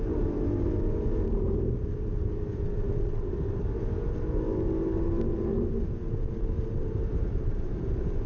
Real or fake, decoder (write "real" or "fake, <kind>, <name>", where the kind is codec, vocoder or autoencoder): fake, vocoder, BigVGAN v2